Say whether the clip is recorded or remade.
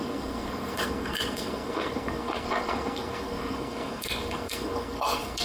remade